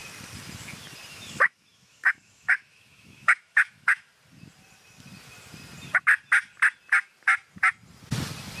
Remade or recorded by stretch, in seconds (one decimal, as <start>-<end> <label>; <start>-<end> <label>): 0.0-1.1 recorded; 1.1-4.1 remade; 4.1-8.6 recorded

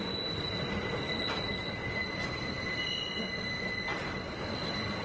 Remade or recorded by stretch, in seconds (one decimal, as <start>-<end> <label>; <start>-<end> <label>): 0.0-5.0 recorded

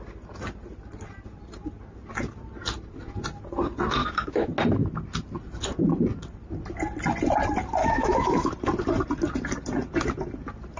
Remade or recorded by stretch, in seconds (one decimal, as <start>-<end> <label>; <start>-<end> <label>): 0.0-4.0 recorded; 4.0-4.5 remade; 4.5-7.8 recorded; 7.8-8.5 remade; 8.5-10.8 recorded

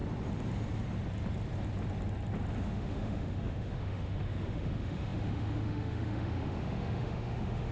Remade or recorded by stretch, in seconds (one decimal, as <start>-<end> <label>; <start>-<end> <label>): 0.0-2.6 recorded; 2.6-7.7 remade

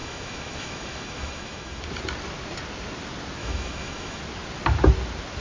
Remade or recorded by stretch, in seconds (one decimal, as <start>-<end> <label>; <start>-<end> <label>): 0.0-1.8 remade; 1.8-3.4 recorded; 3.4-4.2 remade; 4.2-5.4 recorded

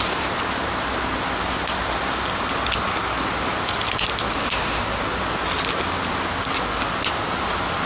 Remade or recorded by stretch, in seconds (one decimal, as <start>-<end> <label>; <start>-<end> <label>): 0.0-4.3 recorded; 4.3-4.8 remade; 4.8-7.9 recorded

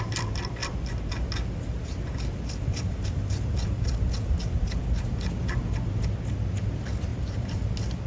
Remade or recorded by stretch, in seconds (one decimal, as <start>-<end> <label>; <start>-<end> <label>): 0.0-8.1 recorded